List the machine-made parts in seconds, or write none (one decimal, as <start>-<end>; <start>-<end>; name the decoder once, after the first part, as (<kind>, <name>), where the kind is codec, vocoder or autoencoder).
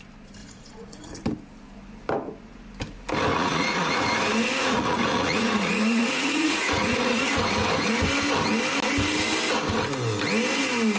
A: 0.4-1.2 (vocoder, Vocos); 3.3-4.1; 4.6-7.4